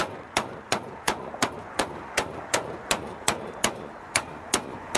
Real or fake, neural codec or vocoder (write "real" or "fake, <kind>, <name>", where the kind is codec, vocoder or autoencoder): fake, vocoder, Vocos